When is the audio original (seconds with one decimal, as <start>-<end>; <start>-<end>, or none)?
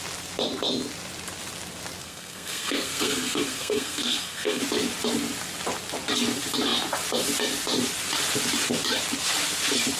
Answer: 0.0-2.0; 4.6-10.0